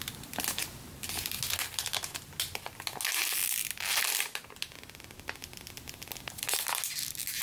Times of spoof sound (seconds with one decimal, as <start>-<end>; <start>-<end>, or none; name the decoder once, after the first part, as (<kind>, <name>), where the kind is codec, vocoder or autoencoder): none